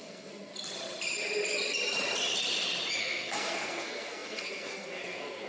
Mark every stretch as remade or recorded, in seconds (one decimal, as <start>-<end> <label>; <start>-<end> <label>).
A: 0.0-0.5 remade; 0.5-3.0 recorded; 3.0-5.5 remade